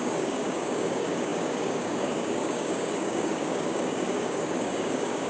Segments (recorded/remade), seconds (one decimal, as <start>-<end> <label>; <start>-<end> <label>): 0.0-5.3 remade